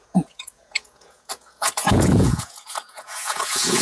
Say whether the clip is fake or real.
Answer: fake